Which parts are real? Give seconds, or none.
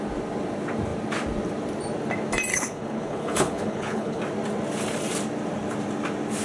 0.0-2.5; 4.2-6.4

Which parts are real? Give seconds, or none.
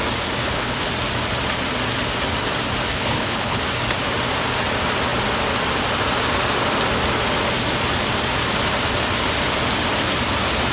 0.0-0.4; 0.9-2.9; 3.6-10.7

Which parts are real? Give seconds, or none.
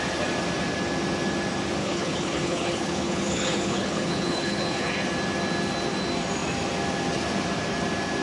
0.0-1.8; 4.9-8.2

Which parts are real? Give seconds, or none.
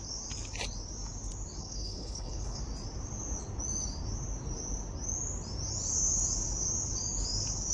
0.0-1.6; 2.6-7.7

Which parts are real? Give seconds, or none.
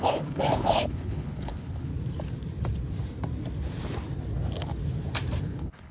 1.9-5.4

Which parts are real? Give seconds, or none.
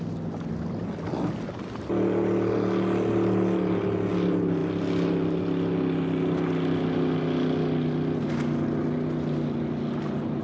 0.0-10.4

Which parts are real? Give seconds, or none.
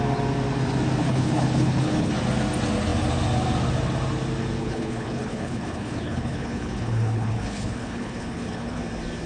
0.0-1.0; 2.1-4.6; 8.8-9.3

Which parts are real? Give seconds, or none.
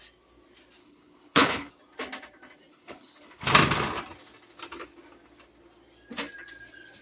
0.0-0.8; 1.7-2.7; 3.5-7.0